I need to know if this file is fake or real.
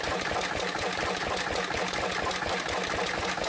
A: real